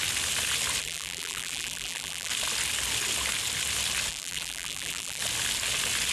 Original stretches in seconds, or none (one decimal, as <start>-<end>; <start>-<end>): 0.0-0.8; 2.3-4.1; 5.2-6.1